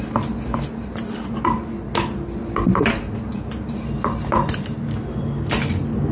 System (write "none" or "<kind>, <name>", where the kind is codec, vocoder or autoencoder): none